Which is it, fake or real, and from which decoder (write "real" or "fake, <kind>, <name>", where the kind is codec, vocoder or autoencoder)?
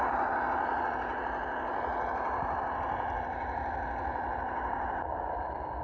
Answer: real